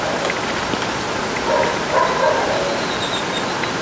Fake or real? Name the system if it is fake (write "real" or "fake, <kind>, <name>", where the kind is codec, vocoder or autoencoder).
real